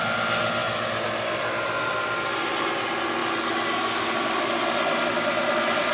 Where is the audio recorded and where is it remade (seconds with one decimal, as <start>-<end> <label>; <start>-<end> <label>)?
0.0-5.9 recorded